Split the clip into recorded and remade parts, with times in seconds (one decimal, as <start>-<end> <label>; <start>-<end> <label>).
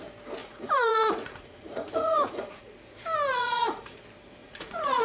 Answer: 0.0-0.4 recorded; 0.4-2.7 remade; 2.7-3.3 recorded; 3.3-4.0 remade; 4.0-4.4 recorded; 4.4-5.0 remade